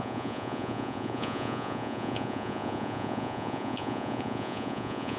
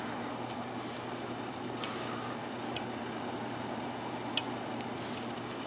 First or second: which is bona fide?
second